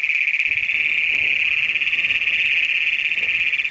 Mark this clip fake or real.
real